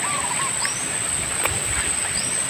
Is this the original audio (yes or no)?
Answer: yes